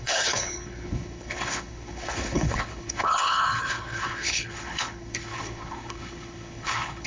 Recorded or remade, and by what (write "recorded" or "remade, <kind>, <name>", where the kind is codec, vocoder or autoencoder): remade, codec, HILCodec